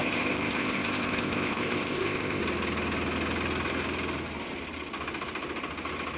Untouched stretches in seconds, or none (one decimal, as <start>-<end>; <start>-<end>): 2.4-6.2